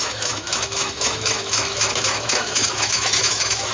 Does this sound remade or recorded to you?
remade